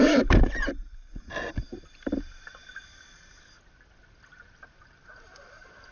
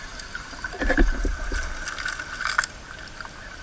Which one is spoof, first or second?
first